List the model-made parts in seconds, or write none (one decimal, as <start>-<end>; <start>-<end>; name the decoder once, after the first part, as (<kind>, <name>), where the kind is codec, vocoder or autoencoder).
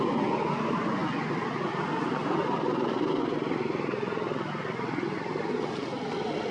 none